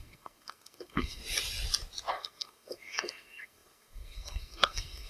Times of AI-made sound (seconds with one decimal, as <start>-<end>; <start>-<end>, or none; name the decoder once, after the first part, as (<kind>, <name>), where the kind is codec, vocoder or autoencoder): 0.0-1.2 (codec, SNAC); 2.1-5.1